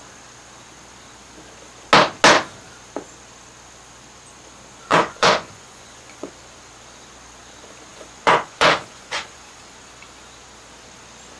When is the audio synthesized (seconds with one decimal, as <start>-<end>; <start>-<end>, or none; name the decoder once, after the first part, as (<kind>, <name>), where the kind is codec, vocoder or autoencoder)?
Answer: 4.9-6.3 (vocoder, Vocos); 7.9-9.6